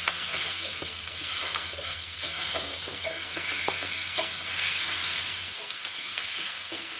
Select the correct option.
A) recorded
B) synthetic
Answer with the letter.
B